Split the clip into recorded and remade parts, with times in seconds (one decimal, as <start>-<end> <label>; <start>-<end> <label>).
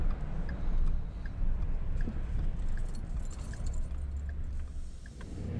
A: 0.0-5.6 recorded